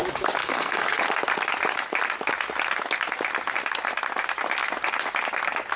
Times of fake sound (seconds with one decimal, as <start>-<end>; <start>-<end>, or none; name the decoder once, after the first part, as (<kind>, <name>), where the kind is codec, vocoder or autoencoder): 0.4-1.0 (codec, SNAC)